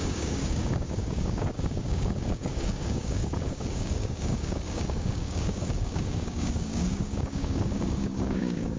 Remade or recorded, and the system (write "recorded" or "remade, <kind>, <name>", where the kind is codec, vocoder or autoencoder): remade, codec, DAC